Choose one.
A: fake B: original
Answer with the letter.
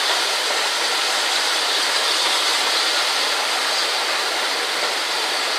A